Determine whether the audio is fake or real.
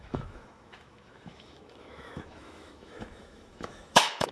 fake